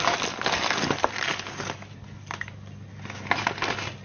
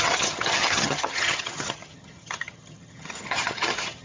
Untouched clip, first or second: first